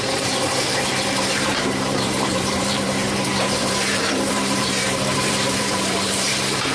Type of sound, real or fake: fake